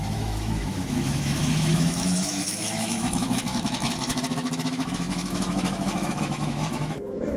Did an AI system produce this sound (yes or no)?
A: yes